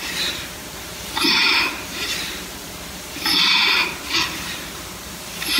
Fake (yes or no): yes